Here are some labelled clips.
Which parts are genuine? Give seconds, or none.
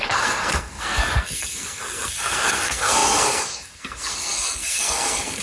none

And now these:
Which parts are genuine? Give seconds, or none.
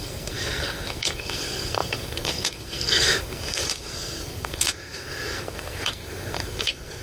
none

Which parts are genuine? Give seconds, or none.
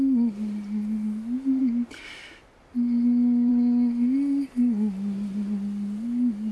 0.0-6.5